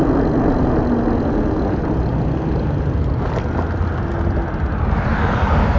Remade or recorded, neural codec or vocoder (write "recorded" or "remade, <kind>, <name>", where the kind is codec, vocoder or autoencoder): recorded